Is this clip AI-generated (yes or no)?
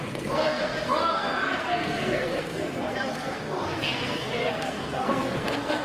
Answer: yes